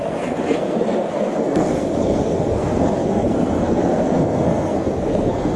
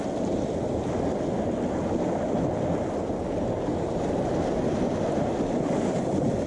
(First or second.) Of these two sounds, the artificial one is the first